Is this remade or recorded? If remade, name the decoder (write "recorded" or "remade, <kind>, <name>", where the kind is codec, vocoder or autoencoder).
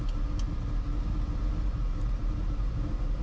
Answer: recorded